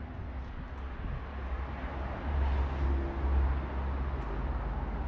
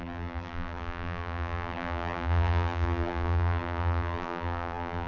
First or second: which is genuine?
first